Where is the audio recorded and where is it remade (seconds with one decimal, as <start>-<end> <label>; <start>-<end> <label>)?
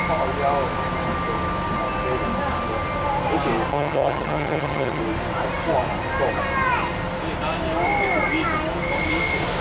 0.0-3.7 recorded; 3.7-5.0 remade; 5.0-9.6 recorded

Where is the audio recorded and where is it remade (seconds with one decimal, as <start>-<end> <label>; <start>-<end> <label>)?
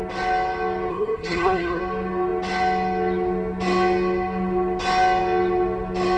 0.0-0.9 recorded; 0.9-1.8 remade; 1.8-6.2 recorded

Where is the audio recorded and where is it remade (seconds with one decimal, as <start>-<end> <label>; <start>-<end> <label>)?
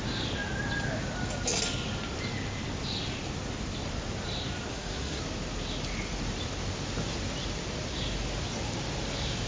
0.0-4.7 recorded; 4.7-5.2 remade; 5.2-9.5 recorded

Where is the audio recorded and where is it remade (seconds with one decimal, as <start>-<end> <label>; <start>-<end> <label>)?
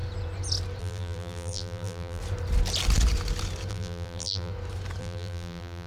0.0-0.8 recorded; 0.8-2.2 remade; 2.2-3.7 recorded; 3.7-4.5 remade; 4.5-5.0 recorded; 5.0-5.9 remade